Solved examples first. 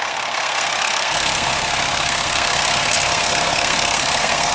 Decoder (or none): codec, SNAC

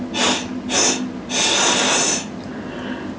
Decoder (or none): none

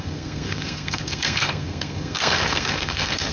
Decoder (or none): codec, SNAC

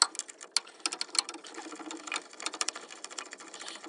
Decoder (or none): none